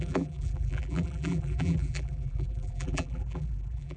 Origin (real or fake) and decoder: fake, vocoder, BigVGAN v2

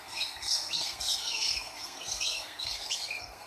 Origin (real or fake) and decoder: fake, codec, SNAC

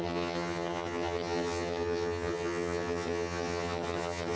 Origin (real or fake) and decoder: fake, vocoder, HiFi-GAN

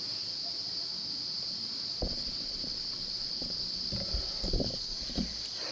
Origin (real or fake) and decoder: real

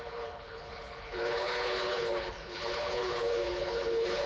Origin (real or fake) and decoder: fake, codec, HILCodec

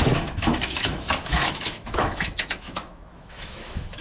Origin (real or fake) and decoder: fake, autoencoder, DAC-VAE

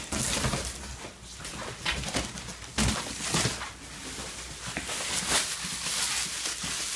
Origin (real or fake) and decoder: real